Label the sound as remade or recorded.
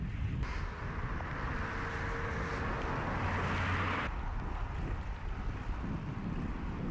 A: recorded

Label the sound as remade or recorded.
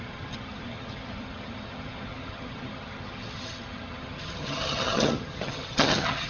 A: remade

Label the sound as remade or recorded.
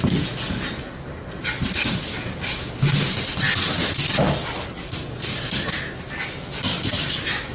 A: recorded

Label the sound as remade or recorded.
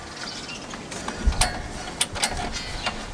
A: recorded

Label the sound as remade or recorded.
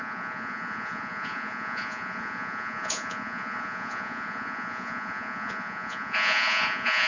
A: remade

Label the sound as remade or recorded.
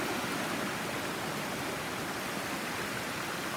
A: recorded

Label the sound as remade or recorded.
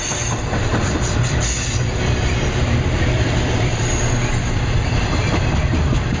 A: remade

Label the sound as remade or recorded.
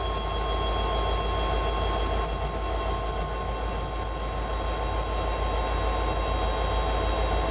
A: recorded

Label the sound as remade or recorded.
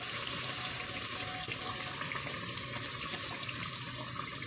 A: recorded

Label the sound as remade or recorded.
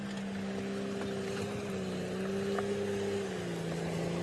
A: recorded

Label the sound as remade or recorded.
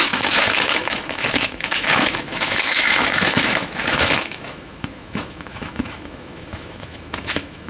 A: remade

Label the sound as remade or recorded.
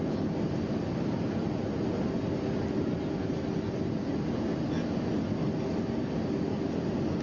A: recorded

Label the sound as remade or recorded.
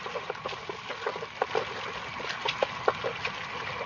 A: recorded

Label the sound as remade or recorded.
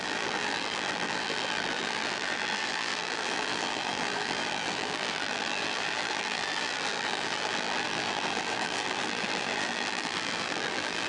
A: remade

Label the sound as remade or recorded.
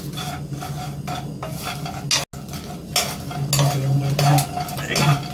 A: recorded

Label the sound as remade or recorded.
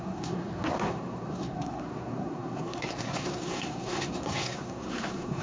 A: remade